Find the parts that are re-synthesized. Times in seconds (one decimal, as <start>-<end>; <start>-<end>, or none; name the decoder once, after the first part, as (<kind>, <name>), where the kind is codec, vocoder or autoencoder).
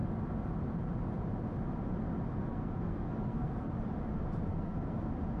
2.5-3.7 (codec, SNAC); 4.5-5.0